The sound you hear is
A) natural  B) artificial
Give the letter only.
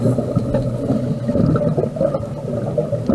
A